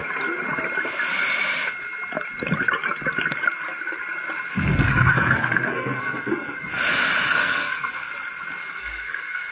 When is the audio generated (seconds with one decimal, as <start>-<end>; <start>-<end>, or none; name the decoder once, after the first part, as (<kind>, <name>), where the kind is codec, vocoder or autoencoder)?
4.5-6.7 (codec, SNAC); 7.3-8.1; 8.7-9.5